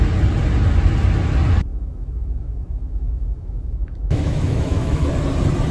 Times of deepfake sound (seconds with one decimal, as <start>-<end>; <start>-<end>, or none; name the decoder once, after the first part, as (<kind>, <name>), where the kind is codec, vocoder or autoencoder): 1.7-5.1 (autoencoder, DAC-VAE)